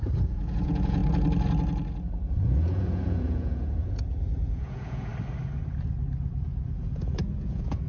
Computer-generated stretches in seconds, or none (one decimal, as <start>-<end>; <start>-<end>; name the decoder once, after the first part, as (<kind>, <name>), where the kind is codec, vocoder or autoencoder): 0.0-1.0 (vocoder, Vocos); 2.3-5.1; 6.4-7.9